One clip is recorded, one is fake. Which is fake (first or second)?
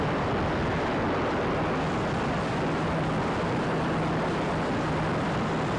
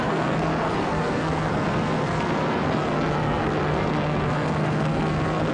second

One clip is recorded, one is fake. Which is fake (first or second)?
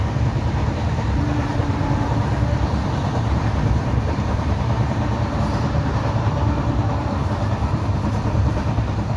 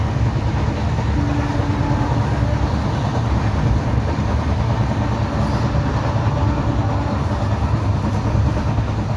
first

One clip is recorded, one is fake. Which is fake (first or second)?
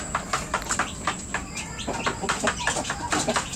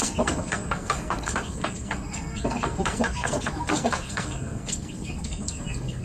second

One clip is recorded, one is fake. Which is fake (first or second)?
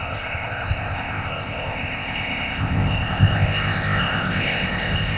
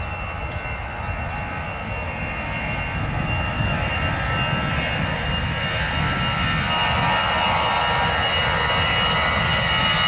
first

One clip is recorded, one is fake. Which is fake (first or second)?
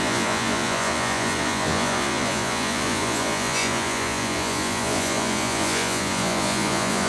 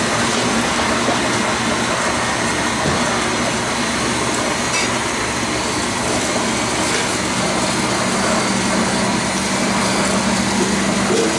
first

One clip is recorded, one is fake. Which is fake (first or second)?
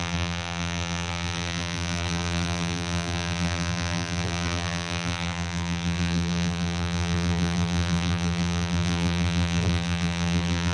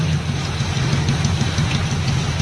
first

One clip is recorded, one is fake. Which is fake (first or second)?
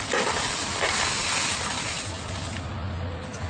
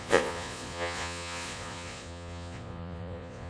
second